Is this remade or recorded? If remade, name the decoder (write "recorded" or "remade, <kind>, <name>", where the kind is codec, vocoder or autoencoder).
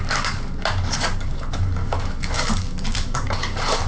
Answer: remade, codec, DAC